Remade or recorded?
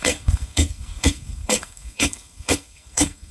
remade